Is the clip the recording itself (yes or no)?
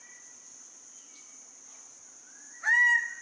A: yes